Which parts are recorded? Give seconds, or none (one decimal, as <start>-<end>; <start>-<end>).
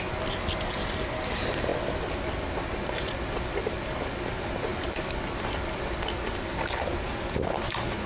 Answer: 0.0-8.1